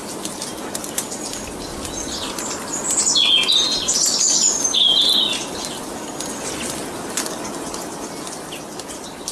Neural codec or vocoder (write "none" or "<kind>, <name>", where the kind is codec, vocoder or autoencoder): none